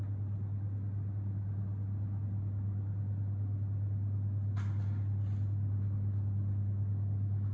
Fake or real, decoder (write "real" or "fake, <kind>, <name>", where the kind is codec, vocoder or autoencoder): real